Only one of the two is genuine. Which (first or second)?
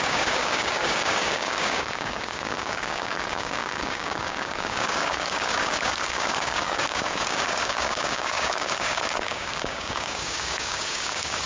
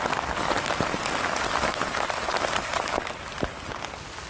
second